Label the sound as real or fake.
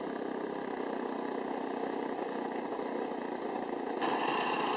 real